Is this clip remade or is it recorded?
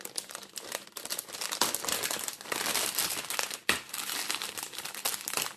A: recorded